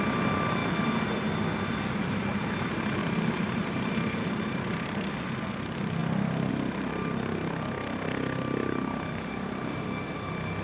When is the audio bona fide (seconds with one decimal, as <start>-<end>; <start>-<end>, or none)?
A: 0.0-3.0; 5.1-10.6